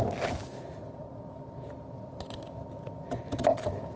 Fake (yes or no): no